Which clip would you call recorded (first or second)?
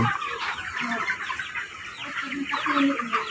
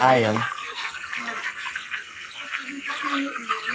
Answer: first